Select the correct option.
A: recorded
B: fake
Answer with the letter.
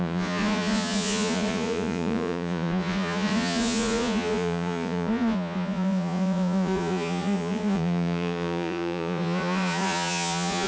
B